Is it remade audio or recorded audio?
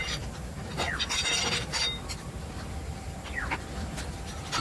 recorded